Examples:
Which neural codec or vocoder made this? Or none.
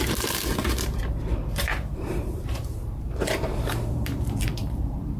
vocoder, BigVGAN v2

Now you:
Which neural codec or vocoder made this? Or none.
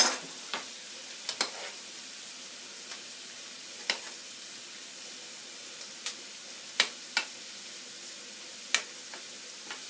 none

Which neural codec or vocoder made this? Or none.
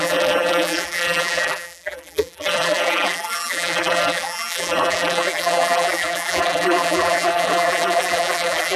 vocoder, BigVGAN v2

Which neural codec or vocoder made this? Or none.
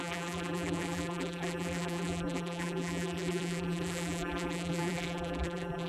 vocoder, BigVGAN v2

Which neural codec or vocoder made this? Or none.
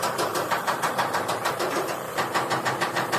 vocoder, BigVGAN v2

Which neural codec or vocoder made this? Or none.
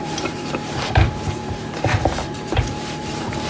vocoder, BigVGAN v2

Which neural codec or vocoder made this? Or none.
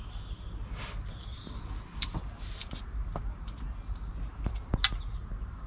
none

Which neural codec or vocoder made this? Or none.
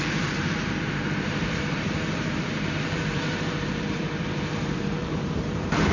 vocoder, BigVGAN v2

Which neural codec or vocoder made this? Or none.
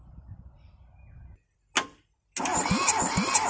none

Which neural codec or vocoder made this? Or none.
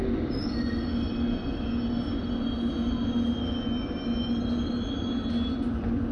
none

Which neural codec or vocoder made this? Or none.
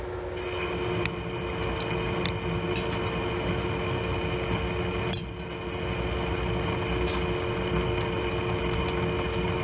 none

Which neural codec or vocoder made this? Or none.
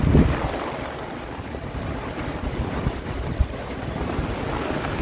vocoder, BigVGAN v2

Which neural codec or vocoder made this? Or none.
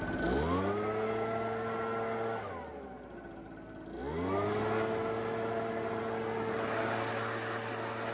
none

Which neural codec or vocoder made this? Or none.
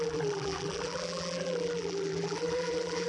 vocoder, BigVGAN v2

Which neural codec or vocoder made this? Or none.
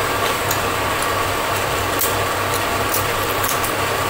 none